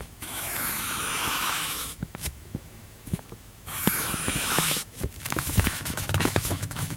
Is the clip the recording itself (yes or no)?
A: no